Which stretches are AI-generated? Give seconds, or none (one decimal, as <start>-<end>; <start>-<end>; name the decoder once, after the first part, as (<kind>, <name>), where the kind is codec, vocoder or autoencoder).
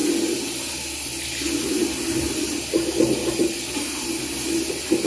none